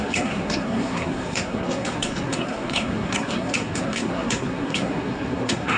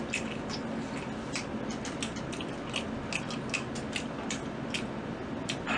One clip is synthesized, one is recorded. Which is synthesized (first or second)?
first